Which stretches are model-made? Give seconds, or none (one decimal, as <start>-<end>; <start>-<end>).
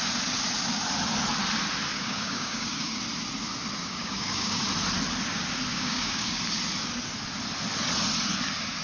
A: 1.9-3.0; 3.8-4.6; 5.7-6.4